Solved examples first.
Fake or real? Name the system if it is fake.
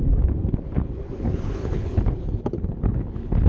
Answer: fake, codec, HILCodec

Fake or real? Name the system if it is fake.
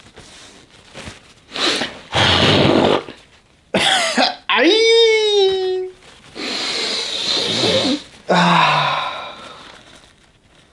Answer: real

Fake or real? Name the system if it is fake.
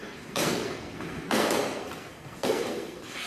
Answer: fake, codec, SNAC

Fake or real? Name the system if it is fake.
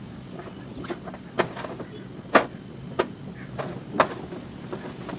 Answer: real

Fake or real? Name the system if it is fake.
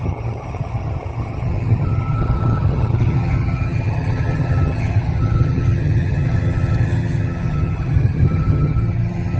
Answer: fake, vocoder, HiFi-GAN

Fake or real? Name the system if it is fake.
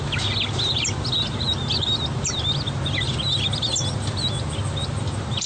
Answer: real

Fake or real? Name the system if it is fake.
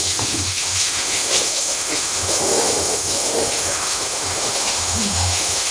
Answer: fake, autoencoder, DAC-VAE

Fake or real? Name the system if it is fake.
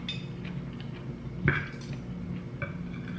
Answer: real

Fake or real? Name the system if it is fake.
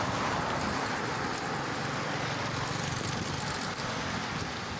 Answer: real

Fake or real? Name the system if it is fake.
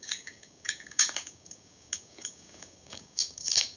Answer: fake, codec, DAC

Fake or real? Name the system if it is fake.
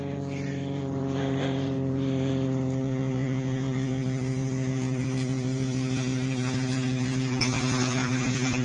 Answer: fake, vocoder, BigVGAN v2